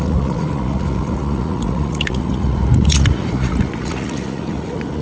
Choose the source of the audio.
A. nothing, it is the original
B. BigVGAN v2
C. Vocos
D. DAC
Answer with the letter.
C